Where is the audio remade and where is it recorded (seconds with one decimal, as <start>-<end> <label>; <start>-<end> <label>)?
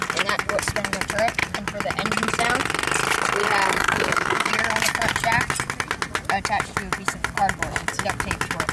0.0-3.7 recorded; 3.7-4.5 remade; 4.5-8.7 recorded